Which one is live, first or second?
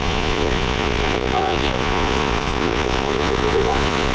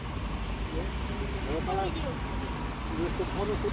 second